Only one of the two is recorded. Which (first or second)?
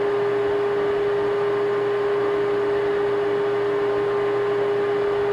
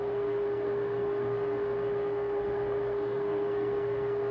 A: first